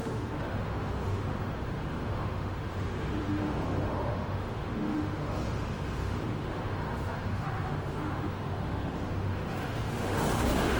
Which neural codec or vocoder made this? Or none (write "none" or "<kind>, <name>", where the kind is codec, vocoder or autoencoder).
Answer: autoencoder, DAC-VAE